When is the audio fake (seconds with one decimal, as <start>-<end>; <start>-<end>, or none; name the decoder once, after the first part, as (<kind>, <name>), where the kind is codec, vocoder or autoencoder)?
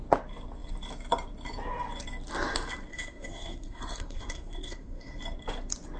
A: 2.9-5.2 (codec, SNAC)